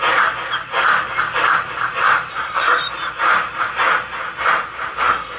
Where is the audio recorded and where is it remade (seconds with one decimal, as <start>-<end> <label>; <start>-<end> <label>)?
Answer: 0.0-2.3 recorded; 2.3-2.8 remade; 2.8-5.0 recorded; 5.0-5.4 remade